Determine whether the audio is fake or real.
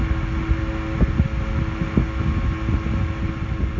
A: real